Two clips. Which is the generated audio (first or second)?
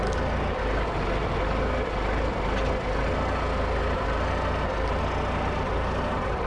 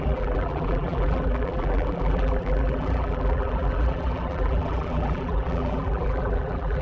second